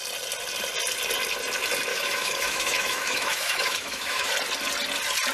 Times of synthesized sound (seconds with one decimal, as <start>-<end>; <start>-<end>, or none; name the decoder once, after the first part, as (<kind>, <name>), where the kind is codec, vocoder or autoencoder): 1.9-4.3 (autoencoder, DAC-VAE)